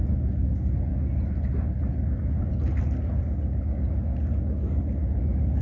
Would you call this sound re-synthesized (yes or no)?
no